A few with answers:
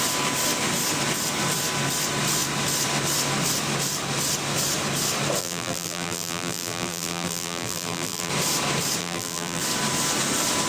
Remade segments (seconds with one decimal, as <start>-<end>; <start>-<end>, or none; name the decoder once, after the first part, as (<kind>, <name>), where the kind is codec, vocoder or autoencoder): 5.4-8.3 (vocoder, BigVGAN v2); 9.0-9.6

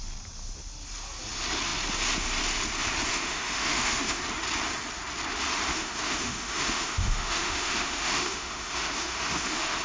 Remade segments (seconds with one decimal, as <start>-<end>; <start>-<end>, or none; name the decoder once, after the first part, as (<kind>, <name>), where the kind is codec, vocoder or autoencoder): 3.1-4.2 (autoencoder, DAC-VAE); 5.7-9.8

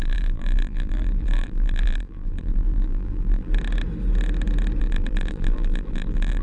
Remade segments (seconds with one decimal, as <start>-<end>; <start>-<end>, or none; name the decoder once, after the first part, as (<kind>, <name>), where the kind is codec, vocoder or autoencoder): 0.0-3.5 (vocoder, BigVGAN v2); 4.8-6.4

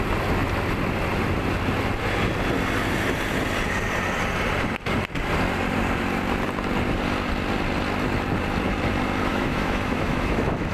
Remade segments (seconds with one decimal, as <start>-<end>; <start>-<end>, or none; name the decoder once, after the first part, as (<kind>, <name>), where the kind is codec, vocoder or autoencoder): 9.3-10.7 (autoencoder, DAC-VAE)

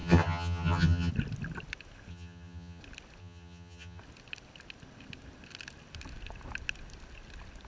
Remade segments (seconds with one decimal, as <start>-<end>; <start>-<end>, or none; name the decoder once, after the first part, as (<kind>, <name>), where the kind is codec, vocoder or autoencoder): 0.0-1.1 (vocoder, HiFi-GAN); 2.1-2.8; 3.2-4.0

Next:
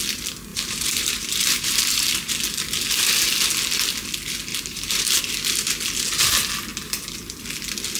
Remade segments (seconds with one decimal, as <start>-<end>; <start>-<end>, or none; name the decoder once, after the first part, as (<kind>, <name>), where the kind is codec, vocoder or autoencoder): 0.5-2.3 (vocoder, BigVGAN v2); 4.5-5.2